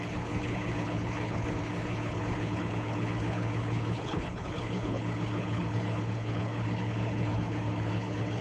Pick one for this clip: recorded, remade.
remade